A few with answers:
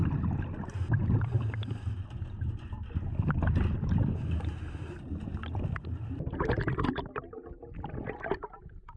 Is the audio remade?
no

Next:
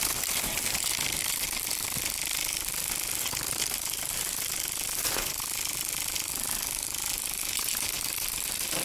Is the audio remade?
no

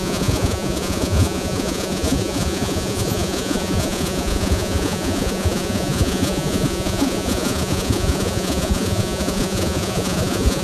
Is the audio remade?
yes